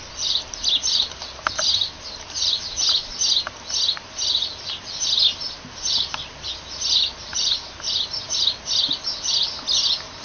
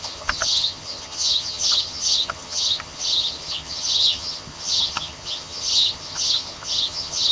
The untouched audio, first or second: first